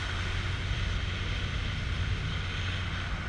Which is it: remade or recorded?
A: recorded